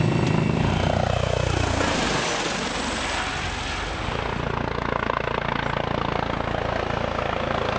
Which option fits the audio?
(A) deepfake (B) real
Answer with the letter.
B